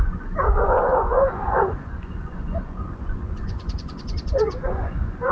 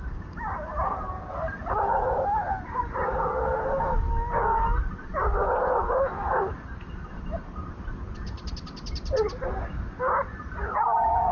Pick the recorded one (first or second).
second